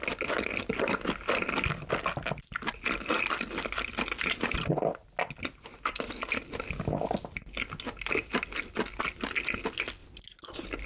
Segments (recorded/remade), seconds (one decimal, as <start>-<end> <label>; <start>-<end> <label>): 0.0-10.9 recorded